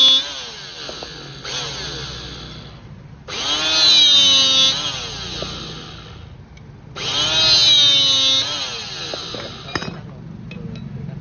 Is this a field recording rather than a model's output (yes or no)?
yes